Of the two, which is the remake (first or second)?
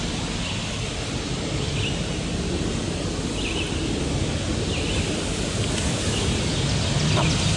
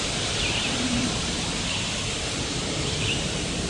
second